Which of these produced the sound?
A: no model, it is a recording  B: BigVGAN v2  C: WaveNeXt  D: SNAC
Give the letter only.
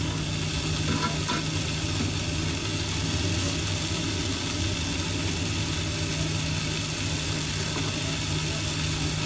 A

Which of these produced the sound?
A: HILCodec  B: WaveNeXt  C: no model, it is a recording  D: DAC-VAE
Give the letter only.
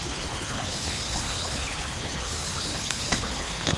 A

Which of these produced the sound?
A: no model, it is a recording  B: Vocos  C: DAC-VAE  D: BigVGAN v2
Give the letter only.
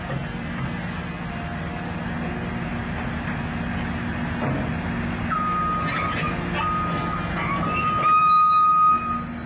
A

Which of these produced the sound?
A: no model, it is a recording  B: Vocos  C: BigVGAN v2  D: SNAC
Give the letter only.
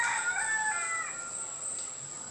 A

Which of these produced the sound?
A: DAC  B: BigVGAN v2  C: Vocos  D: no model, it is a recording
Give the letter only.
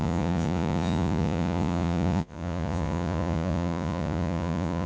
C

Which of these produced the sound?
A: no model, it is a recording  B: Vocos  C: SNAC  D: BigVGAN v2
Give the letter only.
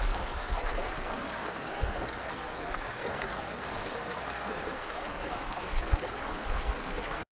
C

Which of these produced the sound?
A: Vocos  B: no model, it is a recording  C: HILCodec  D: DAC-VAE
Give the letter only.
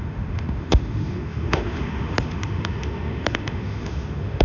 D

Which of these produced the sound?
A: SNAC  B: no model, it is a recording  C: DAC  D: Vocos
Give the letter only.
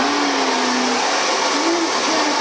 B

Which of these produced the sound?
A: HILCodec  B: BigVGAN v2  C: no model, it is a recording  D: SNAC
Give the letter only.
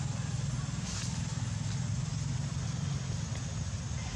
C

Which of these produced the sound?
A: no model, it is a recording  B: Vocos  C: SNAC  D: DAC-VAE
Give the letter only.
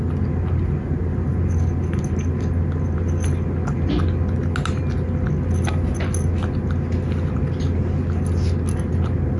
A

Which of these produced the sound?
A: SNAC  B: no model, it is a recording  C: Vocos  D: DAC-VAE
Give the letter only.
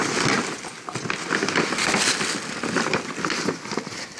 B